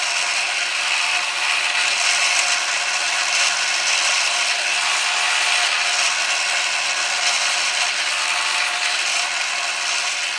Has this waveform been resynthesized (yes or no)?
no